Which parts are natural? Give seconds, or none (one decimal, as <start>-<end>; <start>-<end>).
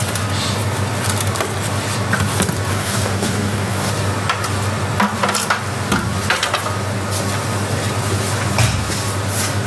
0.0-2.7; 3.9-9.7